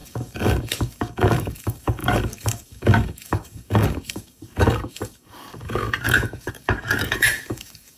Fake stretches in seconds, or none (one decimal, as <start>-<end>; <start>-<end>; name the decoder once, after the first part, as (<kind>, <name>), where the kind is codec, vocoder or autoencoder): 0.0-8.0 (codec, DAC)